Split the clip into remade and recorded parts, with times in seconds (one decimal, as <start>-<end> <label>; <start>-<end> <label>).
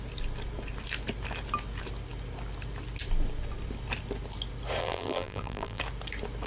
0.0-4.8 recorded; 4.8-5.8 remade; 5.8-6.5 recorded